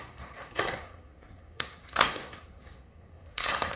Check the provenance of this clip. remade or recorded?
remade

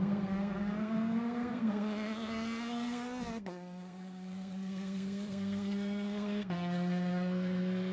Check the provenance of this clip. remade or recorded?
remade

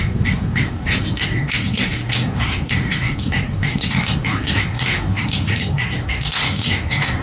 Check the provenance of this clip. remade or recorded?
remade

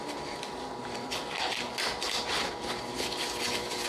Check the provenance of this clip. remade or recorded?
recorded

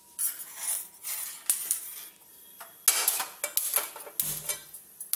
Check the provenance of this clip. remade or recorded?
recorded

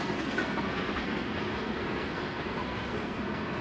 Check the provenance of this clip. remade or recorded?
remade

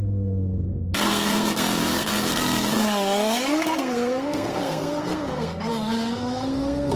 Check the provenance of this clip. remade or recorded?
remade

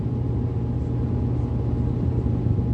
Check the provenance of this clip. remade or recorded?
recorded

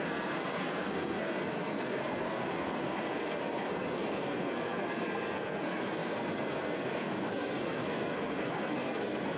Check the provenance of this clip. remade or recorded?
remade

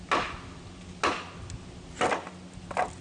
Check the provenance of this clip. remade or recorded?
recorded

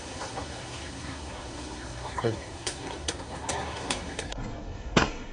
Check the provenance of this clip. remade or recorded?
remade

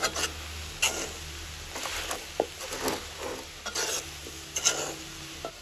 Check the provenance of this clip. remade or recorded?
recorded